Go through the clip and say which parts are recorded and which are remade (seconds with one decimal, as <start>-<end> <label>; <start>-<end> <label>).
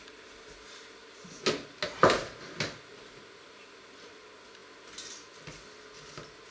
0.0-6.5 recorded